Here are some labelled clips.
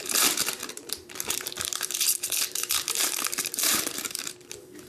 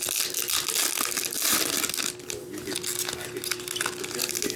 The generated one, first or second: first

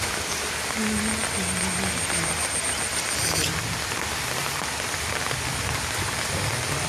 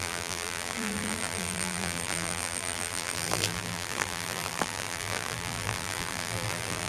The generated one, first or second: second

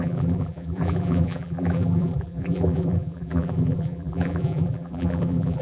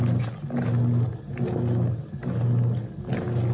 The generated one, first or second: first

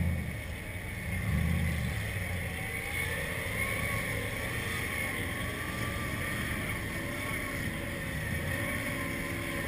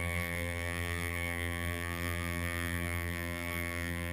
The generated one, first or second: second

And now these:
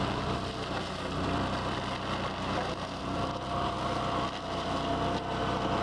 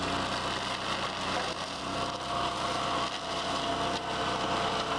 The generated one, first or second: first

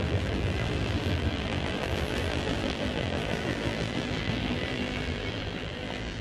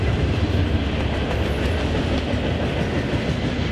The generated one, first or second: first